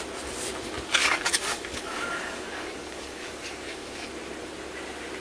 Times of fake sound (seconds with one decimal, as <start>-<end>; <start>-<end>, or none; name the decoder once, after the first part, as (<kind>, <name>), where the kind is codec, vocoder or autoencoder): 1.0-4.1 (codec, DAC)